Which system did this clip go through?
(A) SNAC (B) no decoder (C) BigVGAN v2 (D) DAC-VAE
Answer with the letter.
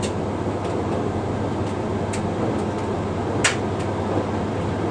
B